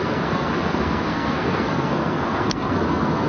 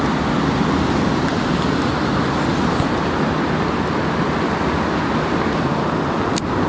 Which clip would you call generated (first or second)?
first